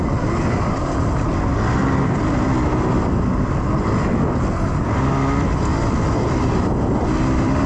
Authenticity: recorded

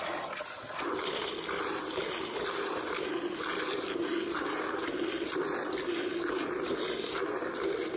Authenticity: recorded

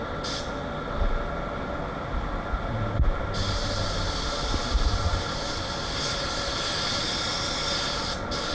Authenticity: recorded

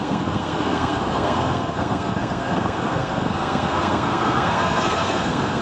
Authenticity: remade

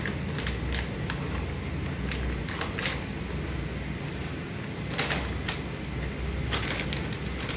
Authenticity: recorded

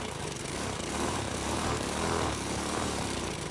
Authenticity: remade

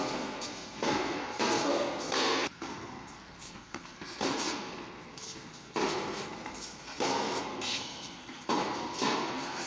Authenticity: remade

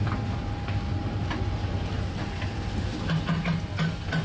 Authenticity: recorded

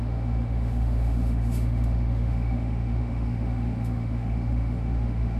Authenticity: remade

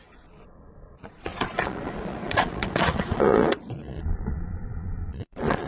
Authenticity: remade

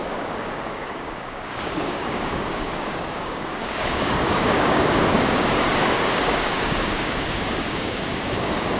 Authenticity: remade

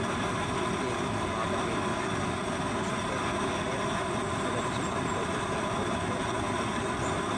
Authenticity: recorded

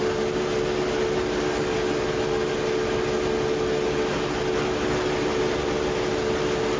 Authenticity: recorded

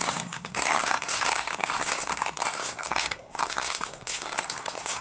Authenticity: remade